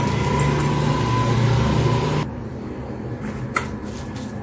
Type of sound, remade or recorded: recorded